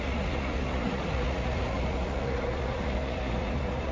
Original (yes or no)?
no